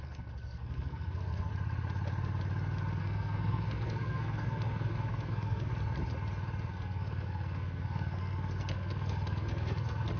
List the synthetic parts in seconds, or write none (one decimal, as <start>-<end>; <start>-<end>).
0.0-1.5; 3.0-5.7; 6.7-10.2